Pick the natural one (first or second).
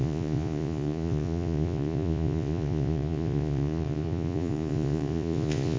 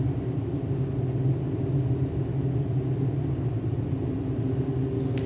second